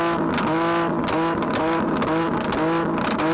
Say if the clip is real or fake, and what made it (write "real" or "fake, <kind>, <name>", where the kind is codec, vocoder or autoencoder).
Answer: real